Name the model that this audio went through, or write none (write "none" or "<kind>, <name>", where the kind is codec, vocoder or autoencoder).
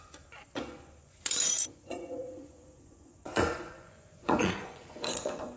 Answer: vocoder, Vocos